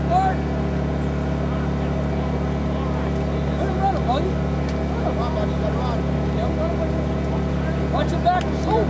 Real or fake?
real